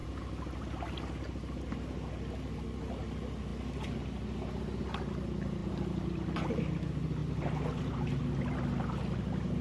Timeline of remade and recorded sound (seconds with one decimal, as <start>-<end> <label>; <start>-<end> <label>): 0.0-1.7 remade; 1.7-3.5 recorded; 3.5-5.1 remade; 5.1-9.6 recorded